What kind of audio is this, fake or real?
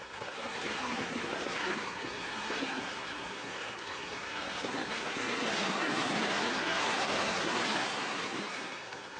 fake